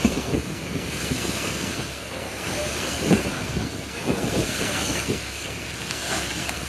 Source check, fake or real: fake